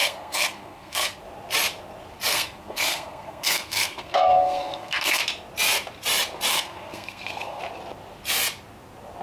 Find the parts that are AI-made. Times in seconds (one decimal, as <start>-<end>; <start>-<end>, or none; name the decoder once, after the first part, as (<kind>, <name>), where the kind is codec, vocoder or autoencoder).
0.0-1.2 (codec, SNAC); 2.3-5.2; 6.5-7.6